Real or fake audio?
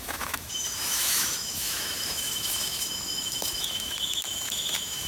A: fake